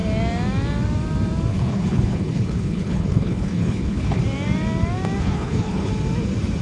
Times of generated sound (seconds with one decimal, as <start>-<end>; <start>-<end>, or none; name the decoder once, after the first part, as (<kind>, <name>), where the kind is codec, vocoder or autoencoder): 1.5-4.2 (codec, HILCodec); 5.2-5.9